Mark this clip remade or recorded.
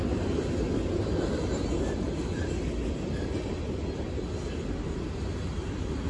recorded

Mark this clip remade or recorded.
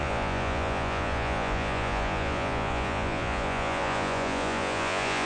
remade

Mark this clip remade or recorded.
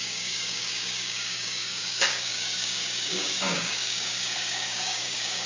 remade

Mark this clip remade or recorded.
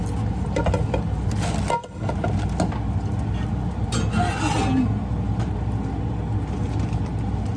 recorded